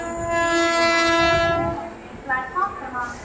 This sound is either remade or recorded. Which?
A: recorded